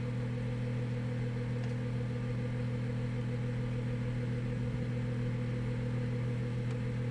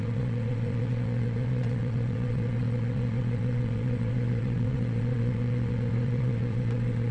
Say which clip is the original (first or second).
first